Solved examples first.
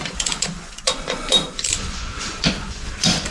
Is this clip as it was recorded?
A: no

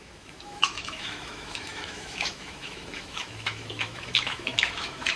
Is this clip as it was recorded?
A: no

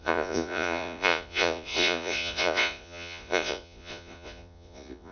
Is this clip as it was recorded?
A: no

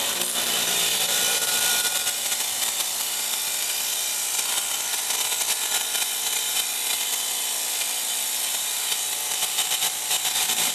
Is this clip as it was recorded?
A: no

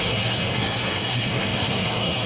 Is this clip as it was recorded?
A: no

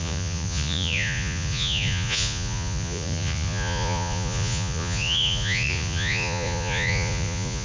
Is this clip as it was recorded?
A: no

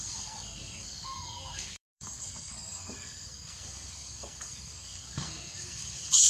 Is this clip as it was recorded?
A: no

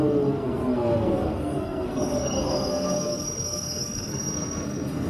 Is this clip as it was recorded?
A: no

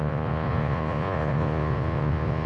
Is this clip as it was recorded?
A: no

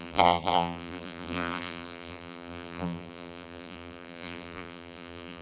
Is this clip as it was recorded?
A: no